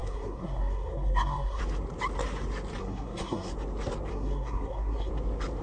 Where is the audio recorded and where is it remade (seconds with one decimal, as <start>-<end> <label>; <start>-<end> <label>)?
0.0-1.6 remade; 1.6-2.8 recorded; 2.8-3.5 remade; 3.5-4.1 recorded; 4.1-5.1 remade; 5.1-5.6 recorded